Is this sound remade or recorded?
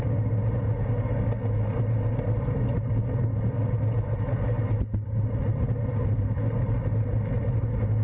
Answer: recorded